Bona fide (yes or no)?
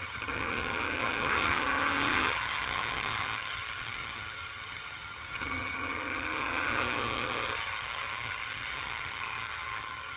no